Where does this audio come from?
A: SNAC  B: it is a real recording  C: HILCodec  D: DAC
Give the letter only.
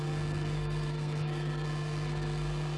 A